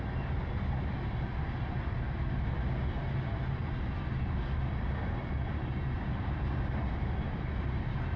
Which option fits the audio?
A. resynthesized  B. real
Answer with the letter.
B